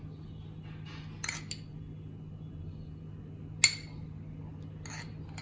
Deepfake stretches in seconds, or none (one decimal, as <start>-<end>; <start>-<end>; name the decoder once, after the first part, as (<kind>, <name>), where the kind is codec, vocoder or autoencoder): none

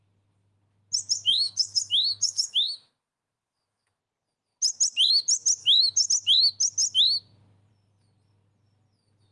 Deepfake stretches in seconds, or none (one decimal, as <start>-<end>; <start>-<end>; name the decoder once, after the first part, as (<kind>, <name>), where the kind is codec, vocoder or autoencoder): 1.3-4.0 (autoencoder, DAC-VAE); 5.6-6.1